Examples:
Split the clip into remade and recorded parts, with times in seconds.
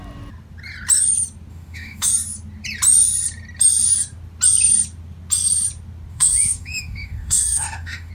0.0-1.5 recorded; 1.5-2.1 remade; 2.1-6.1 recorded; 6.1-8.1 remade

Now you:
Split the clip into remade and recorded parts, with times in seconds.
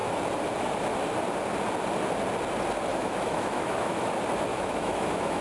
0.0-2.9 recorded; 2.9-4.1 remade; 4.1-4.5 recorded; 4.5-5.4 remade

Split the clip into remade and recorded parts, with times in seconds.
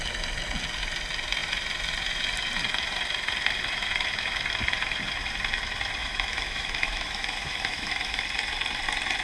0.0-6.0 recorded; 6.0-8.2 remade; 8.2-9.2 recorded